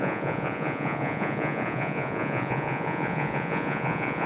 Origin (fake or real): fake